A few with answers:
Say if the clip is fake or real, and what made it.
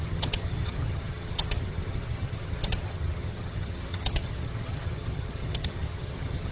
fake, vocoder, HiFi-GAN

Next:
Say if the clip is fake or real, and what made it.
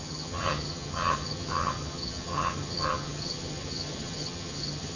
fake, vocoder, HiFi-GAN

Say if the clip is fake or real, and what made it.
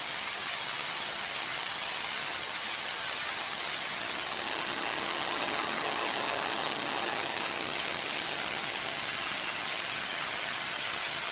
fake, vocoder, HiFi-GAN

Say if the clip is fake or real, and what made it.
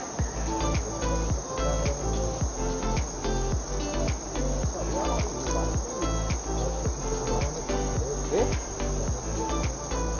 real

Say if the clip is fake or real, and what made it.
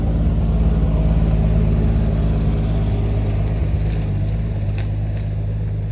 real